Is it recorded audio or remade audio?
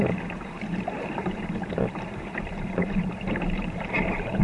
remade